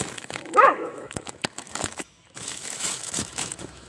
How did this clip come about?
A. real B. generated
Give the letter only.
B